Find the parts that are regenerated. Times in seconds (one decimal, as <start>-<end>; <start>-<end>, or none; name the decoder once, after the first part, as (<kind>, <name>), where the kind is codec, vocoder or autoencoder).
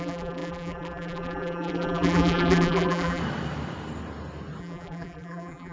0.0-3.2 (vocoder, BigVGAN v2); 4.6-5.7